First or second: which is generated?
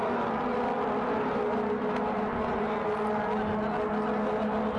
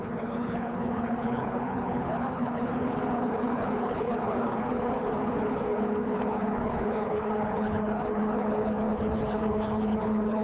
second